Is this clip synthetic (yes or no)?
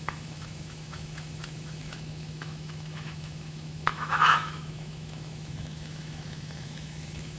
yes